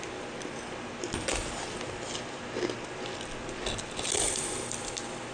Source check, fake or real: real